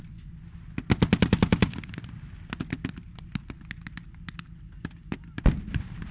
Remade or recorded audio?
recorded